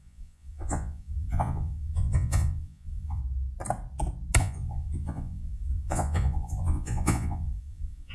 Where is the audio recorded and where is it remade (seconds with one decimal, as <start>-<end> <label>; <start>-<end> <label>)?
0.0-3.2 remade; 3.2-4.4 recorded; 4.4-8.1 remade